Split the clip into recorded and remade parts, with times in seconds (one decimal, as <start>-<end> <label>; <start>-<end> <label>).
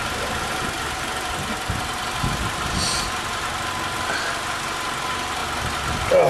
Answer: 0.0-6.3 recorded